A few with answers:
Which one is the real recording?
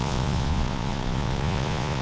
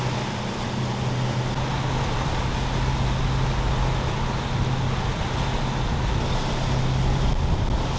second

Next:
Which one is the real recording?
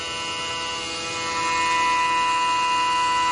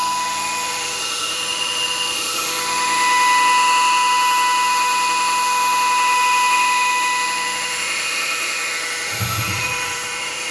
first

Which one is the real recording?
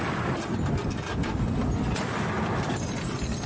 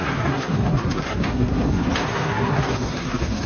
first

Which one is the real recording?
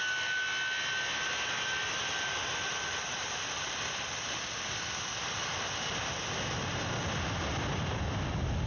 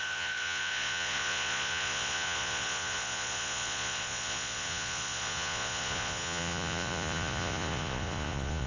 first